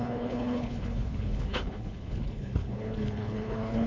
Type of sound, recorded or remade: remade